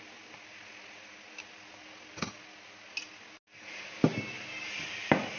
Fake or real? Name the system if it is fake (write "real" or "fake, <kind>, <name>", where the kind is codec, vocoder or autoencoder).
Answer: real